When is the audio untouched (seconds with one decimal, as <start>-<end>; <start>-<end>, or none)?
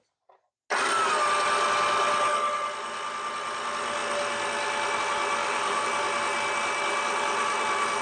0.0-5.4; 5.9-8.0